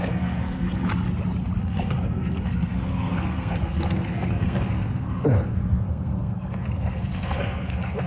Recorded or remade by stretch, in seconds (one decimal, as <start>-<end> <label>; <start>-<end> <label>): 0.0-0.9 remade; 0.9-1.6 recorded; 1.6-8.1 remade